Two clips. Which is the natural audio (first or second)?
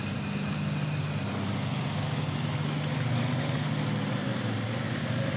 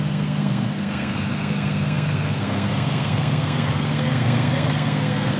first